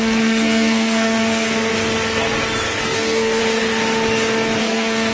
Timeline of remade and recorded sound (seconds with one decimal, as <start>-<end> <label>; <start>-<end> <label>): 0.0-1.7 remade; 1.7-2.8 recorded; 2.8-3.4 remade; 3.4-4.6 recorded; 4.6-5.1 remade